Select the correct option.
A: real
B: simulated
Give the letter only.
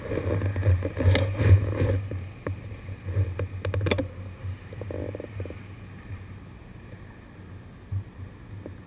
A